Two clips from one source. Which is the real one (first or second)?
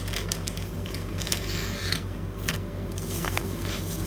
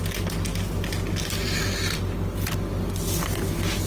second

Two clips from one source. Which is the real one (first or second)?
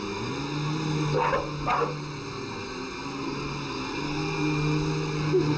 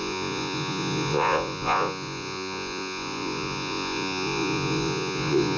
first